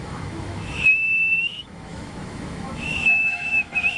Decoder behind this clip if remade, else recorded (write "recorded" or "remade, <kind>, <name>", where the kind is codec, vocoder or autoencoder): remade, autoencoder, DAC-VAE